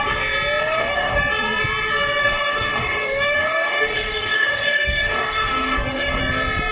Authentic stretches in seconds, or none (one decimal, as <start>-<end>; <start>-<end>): 0.0-0.6; 1.2-2.2; 6.2-6.7